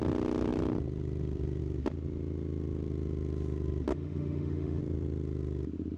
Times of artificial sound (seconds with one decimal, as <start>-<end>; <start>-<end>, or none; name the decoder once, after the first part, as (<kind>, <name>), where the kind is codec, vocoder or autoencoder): 3.9-4.8 (autoencoder, DAC-VAE)